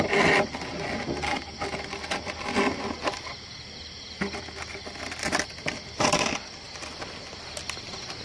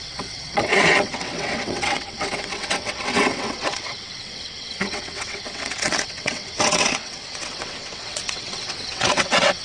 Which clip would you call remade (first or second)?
second